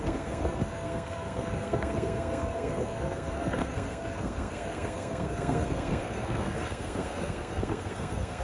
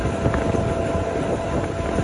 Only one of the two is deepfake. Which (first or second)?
first